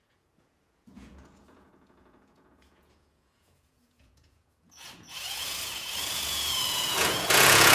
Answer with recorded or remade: remade